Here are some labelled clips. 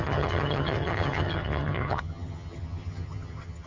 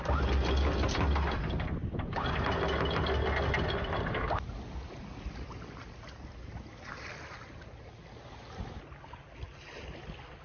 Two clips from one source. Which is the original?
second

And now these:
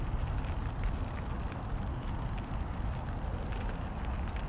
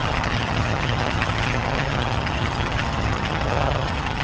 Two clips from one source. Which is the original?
first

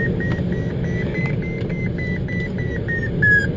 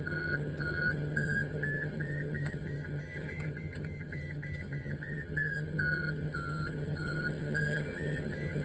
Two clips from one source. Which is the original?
first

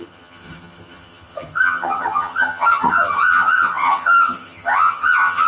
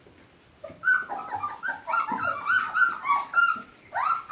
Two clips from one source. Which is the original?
second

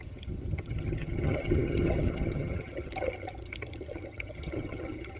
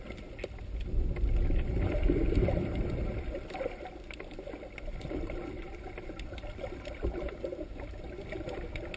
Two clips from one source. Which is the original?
second